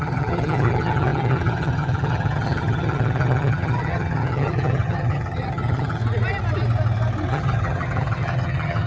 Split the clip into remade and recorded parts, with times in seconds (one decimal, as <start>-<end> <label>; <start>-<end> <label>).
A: 0.0-6.0 remade; 6.0-7.3 recorded; 7.3-8.9 remade